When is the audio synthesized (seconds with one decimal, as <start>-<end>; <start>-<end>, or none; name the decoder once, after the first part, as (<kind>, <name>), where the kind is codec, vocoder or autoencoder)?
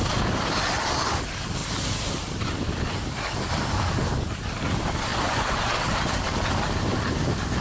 5.1-5.7 (vocoder, Vocos)